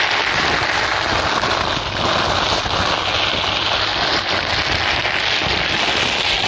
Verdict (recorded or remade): recorded